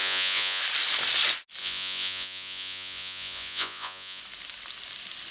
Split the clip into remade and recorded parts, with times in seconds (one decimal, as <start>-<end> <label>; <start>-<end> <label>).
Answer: 0.0-0.6 remade; 0.6-1.6 recorded; 1.6-4.2 remade; 4.2-5.3 recorded